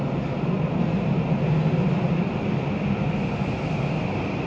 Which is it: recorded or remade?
recorded